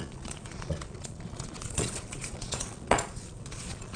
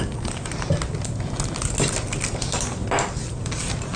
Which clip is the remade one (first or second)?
first